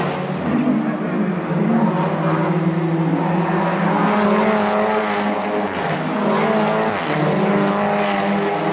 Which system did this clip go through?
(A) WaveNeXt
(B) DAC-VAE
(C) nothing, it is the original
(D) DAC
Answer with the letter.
C